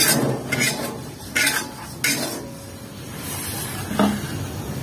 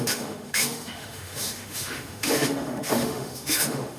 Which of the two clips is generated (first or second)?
second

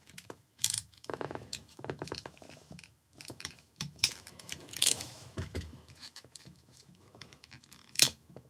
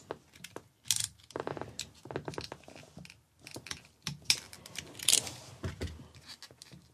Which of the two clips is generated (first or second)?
first